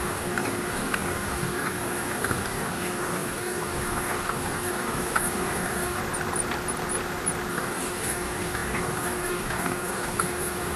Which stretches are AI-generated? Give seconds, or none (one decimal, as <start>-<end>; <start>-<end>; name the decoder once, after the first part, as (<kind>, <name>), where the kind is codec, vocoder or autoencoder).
0.0-6.0 (codec, DAC); 7.5-10.8